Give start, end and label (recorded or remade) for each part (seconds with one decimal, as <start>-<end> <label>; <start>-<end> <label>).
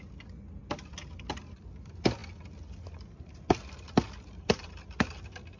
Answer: 0.0-5.6 recorded